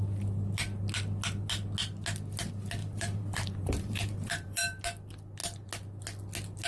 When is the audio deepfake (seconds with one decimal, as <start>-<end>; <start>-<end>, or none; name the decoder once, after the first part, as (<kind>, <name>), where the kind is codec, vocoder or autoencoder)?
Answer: 2.8-4.8 (vocoder, BigVGAN v2)